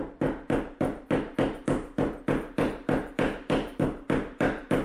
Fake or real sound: fake